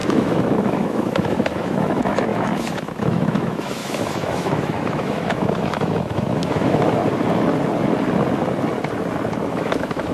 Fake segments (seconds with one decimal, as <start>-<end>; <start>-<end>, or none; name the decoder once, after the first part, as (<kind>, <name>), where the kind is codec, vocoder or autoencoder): 0.0-7.0 (autoencoder, DAC-VAE); 9.5-10.1